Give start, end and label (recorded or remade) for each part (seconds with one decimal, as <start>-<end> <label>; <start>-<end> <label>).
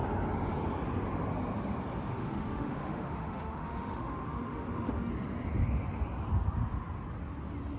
0.0-2.1 recorded; 2.1-5.1 remade; 5.1-7.8 recorded